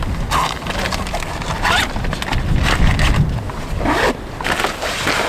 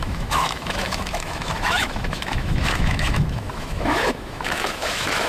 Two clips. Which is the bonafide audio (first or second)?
first